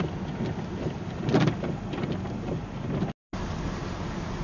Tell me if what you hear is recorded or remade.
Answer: recorded